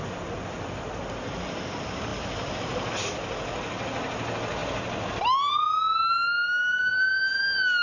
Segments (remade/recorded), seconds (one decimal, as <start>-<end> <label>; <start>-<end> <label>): 0.0-2.1 recorded; 2.1-2.9 remade; 2.9-4.6 recorded; 4.6-5.6 remade; 5.6-7.8 recorded